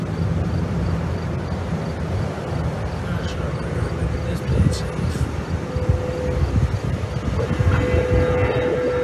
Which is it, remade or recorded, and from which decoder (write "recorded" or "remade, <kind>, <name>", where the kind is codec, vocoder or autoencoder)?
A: recorded